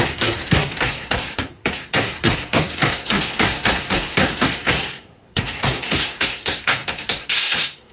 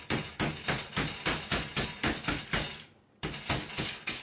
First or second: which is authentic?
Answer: second